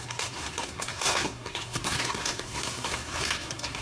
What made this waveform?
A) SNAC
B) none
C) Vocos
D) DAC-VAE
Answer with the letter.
A